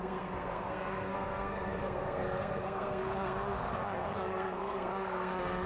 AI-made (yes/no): yes